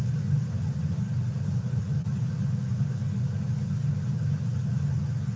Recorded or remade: recorded